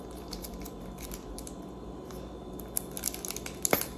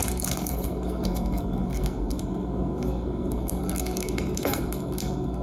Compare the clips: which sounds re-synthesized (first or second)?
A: second